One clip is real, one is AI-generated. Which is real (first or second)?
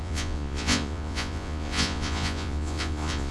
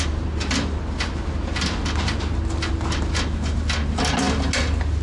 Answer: second